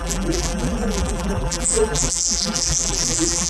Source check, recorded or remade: remade